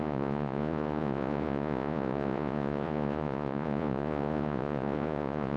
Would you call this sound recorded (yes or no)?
no